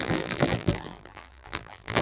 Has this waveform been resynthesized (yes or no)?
yes